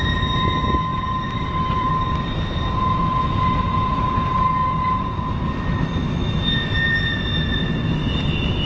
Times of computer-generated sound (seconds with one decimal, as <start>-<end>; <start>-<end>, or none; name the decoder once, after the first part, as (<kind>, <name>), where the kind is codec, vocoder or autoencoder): 0.9-1.9 (vocoder, BigVGAN v2); 3.7-4.4